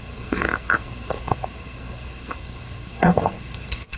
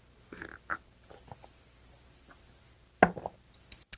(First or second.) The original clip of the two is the second